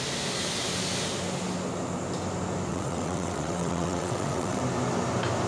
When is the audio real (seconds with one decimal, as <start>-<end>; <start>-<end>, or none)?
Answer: 0.0-2.7; 4.6-5.5